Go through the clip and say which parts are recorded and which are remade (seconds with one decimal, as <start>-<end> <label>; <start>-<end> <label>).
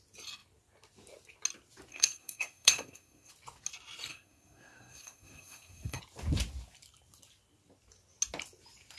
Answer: 0.0-1.9 recorded; 1.9-3.3 remade; 3.3-4.1 recorded; 4.1-6.0 remade; 6.0-9.0 recorded